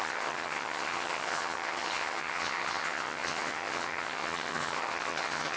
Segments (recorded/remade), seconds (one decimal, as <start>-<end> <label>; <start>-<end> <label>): 0.0-5.6 remade